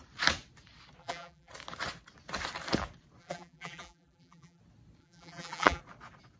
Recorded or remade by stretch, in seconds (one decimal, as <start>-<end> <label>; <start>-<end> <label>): 0.0-1.0 recorded; 1.0-1.5 remade; 1.5-3.2 recorded; 3.2-4.6 remade; 4.6-5.0 recorded; 5.0-5.8 remade; 5.8-6.4 recorded